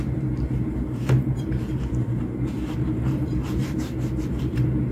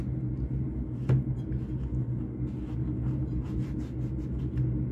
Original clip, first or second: second